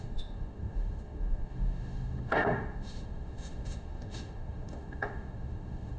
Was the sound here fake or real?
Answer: fake